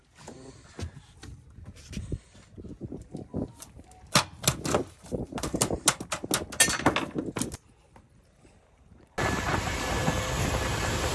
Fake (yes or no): no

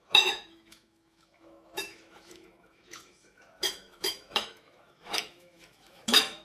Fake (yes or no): yes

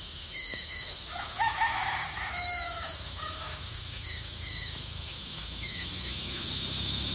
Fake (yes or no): yes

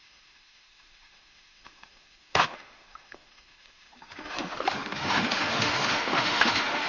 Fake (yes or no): yes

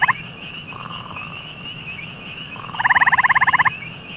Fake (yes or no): yes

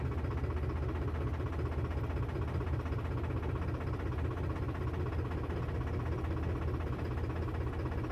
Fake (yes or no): no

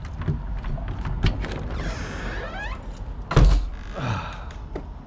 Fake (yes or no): no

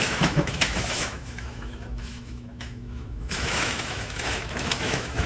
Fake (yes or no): yes